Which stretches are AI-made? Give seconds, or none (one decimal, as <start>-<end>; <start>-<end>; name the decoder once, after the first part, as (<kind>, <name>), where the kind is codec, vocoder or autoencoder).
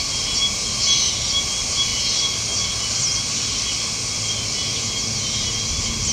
none